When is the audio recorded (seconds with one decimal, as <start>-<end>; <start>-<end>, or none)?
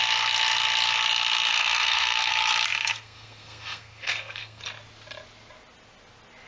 0.0-1.5; 2.3-2.9; 4.6-6.5